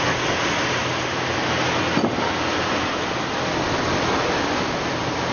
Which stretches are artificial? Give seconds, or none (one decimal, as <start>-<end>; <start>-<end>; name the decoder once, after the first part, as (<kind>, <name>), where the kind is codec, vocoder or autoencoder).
none